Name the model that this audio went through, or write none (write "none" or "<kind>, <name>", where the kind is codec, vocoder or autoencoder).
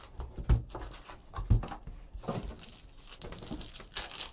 none